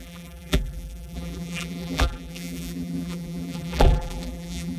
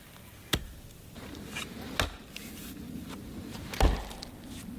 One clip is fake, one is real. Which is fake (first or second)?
first